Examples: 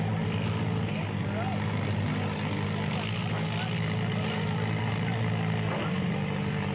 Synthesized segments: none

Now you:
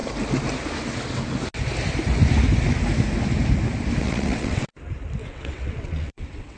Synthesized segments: 4.0-4.7 (vocoder, WaveNeXt); 5.3-6.6

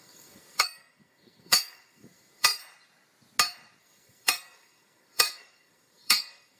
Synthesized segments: 0.0-2.6 (codec, SNAC); 3.8-6.6

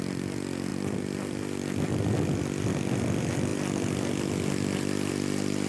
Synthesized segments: 0.7-2.1 (vocoder, BigVGAN v2); 3.5-5.1

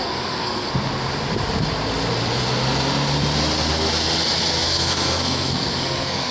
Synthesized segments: 0.0-0.7 (codec, SNAC); 4.5-6.3

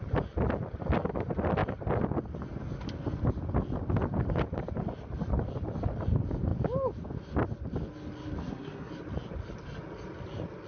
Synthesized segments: 8.4-8.9 (codec, SNAC)

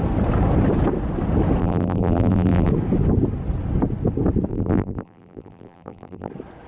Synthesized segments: 1.6-2.7 (vocoder, BigVGAN v2); 4.5-6.3